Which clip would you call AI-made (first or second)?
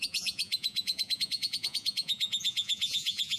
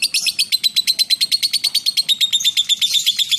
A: first